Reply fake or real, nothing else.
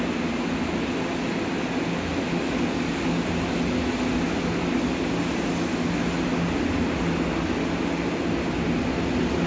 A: real